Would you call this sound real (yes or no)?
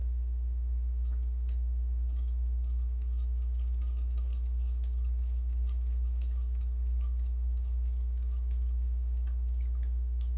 no